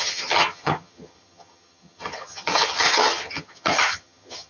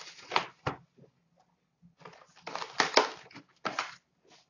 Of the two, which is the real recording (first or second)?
second